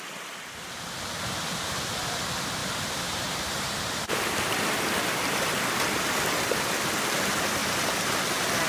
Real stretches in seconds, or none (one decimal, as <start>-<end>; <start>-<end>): 0.0-2.6; 4.6-8.7